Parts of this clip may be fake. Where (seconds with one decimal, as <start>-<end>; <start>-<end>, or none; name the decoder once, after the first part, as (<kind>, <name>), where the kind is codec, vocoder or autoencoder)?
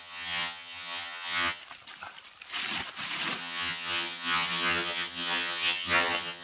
0.0-1.6 (vocoder, HiFi-GAN); 3.4-6.4